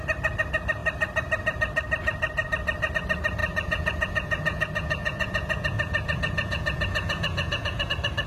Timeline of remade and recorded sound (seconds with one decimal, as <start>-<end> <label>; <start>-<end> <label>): 0.0-3.4 recorded; 3.4-7.9 remade; 7.9-8.3 recorded